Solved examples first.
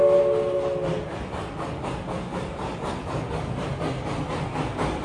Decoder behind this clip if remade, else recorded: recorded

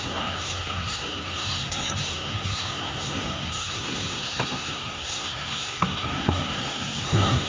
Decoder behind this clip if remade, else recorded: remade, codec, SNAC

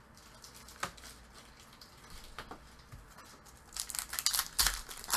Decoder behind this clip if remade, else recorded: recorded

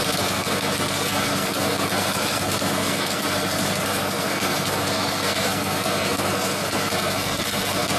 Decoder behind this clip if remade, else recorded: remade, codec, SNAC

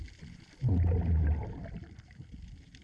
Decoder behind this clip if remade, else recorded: recorded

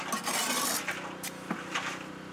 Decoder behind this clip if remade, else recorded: recorded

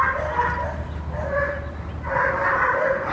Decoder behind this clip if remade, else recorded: recorded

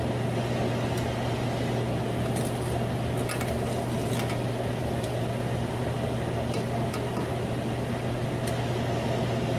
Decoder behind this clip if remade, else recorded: recorded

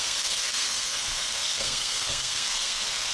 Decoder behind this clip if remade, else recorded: remade, codec, SNAC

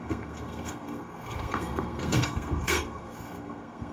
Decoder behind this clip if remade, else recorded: remade, codec, SNAC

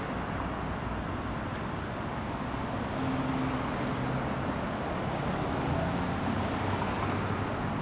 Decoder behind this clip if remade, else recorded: recorded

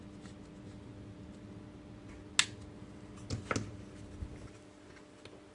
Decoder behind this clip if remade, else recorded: recorded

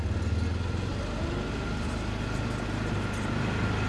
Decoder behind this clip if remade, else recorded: recorded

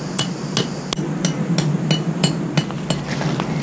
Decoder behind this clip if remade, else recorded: recorded